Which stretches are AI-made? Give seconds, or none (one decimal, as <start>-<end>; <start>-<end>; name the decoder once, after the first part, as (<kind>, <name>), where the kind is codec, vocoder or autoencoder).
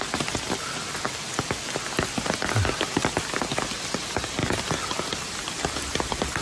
4.4-6.0 (vocoder, BigVGAN v2)